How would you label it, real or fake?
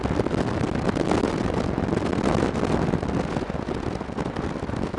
real